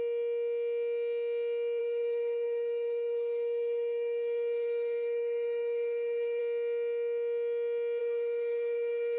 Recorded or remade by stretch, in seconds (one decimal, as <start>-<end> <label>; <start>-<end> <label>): 0.0-1.8 recorded; 1.8-6.4 remade; 6.4-8.0 recorded; 8.0-9.2 remade